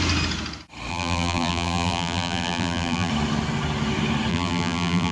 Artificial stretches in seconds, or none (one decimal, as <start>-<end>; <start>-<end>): 0.9-3.1; 4.3-5.1